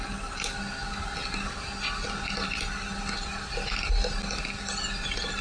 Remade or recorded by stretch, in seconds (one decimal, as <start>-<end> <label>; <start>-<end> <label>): 0.0-5.4 recorded

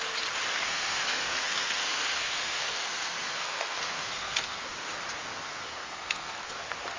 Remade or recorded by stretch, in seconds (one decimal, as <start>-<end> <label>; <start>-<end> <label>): 0.0-0.5 recorded; 0.5-4.7 remade; 4.7-5.2 recorded; 5.2-6.6 remade; 6.6-7.0 recorded

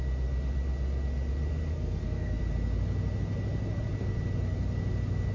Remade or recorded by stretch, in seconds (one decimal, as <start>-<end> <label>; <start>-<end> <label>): 0.0-1.7 recorded; 1.7-2.4 remade; 2.4-5.3 recorded